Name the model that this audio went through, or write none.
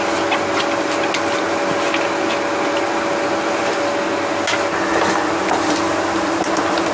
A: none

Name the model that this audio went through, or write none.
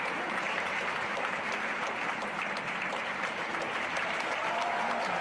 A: vocoder, BigVGAN v2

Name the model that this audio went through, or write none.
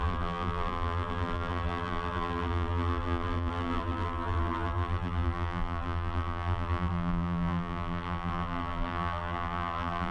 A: vocoder, BigVGAN v2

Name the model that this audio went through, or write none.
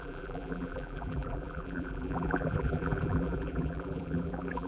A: vocoder, BigVGAN v2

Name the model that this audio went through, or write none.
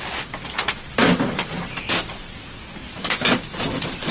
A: vocoder, BigVGAN v2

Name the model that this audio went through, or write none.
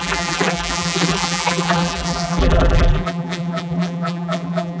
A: vocoder, BigVGAN v2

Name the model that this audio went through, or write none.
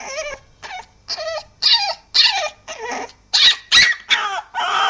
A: none